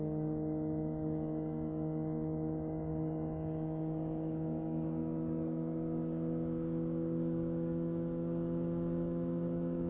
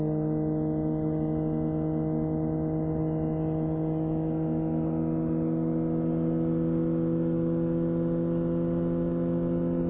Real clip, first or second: second